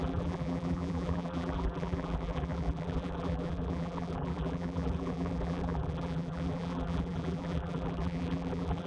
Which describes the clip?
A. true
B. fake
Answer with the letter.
B